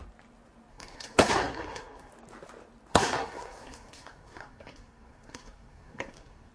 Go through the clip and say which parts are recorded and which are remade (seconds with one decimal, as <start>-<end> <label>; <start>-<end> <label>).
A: 0.0-0.7 recorded; 0.7-2.1 remade; 2.1-2.9 recorded; 2.9-6.5 remade